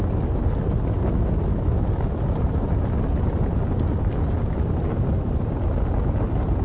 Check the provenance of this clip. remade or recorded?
recorded